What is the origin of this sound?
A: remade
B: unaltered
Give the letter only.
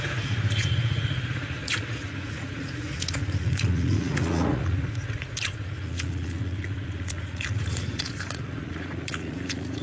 A